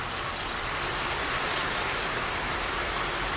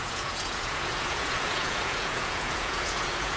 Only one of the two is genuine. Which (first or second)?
first